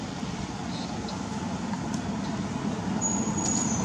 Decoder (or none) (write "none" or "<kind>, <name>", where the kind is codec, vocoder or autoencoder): none